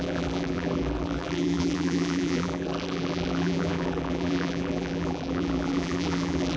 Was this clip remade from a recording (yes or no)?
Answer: yes